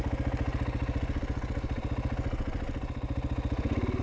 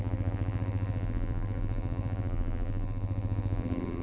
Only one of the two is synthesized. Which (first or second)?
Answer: second